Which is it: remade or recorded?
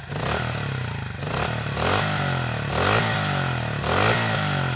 recorded